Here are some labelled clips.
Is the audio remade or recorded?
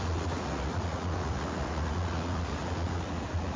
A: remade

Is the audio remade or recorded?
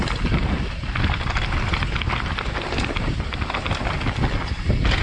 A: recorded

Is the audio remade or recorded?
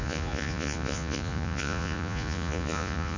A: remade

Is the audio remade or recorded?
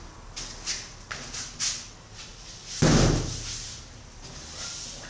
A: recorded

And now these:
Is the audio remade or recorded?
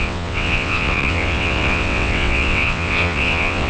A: remade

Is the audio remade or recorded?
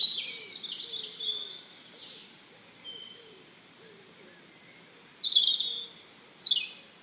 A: recorded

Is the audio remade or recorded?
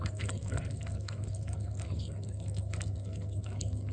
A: remade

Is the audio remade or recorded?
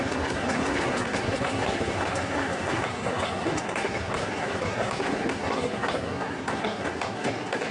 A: remade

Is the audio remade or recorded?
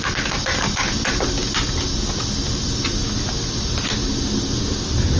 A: recorded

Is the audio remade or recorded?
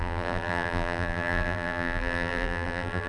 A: remade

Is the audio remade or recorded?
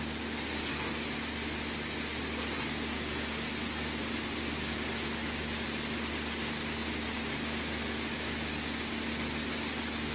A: recorded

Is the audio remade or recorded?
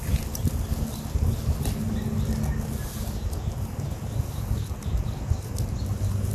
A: recorded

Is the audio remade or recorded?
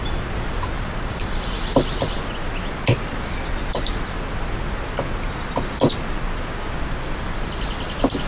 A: recorded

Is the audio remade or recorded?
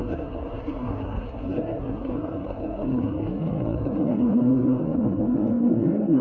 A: remade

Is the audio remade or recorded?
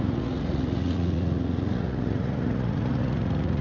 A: remade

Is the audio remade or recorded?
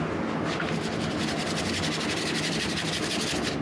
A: recorded